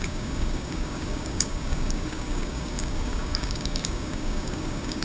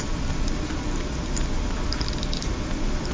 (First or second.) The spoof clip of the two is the first